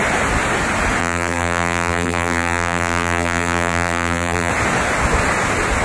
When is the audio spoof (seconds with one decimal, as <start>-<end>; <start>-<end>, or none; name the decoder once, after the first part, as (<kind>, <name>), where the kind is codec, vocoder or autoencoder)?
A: 1.0-4.5 (vocoder, BigVGAN v2)